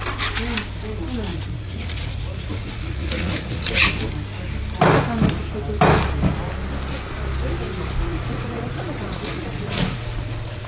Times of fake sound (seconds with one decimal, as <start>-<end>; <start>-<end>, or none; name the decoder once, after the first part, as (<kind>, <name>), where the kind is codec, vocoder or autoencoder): 1.3-3.9 (vocoder, Vocos); 8.1-10.7